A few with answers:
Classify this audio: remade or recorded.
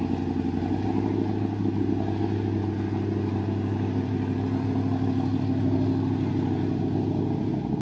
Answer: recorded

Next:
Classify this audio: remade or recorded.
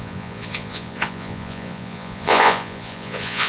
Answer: remade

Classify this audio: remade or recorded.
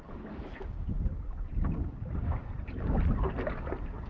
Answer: recorded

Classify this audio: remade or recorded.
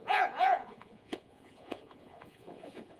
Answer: remade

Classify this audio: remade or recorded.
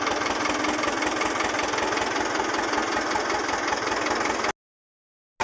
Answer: recorded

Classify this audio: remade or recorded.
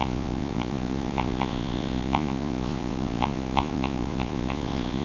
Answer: remade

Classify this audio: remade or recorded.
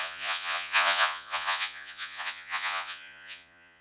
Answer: remade